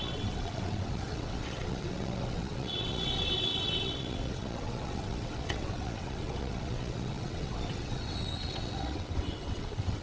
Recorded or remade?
remade